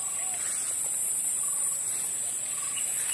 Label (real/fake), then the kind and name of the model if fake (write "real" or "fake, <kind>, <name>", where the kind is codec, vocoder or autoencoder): real